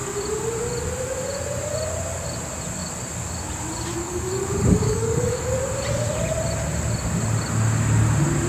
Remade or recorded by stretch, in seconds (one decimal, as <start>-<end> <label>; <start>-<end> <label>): 0.0-4.0 recorded; 4.0-5.6 remade; 5.6-8.5 recorded